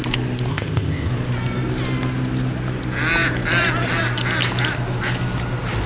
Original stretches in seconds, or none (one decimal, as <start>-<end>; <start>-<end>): 0.0-0.5; 1.1-5.9